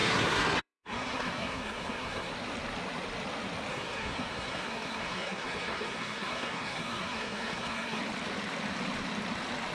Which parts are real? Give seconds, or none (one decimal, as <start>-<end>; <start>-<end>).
2.3-3.7; 8.0-9.7